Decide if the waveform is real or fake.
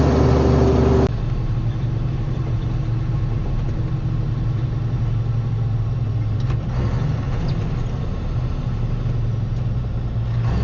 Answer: real